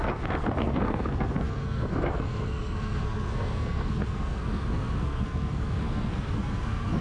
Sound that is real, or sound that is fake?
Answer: fake